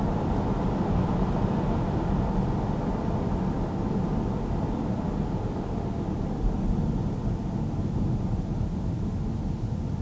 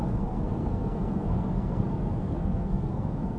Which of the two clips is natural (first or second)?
first